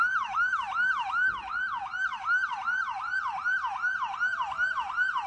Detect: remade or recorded recorded